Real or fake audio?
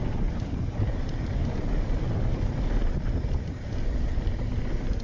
real